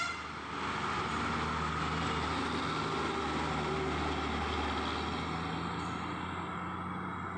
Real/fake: real